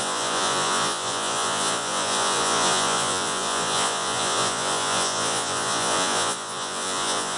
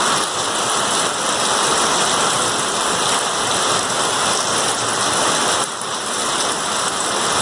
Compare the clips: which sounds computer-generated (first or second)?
first